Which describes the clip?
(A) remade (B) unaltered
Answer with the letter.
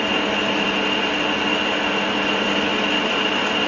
B